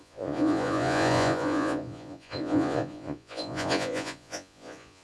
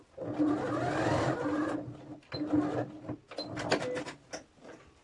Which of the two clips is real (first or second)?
second